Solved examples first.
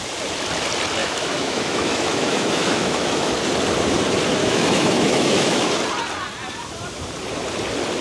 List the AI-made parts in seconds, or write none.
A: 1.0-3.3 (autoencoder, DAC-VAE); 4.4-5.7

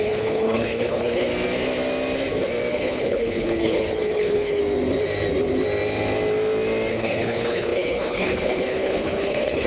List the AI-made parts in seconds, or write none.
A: 0.0-1.3 (codec, HILCodec); 2.7-4.6; 6.9-9.7